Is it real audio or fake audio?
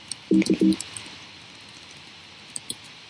real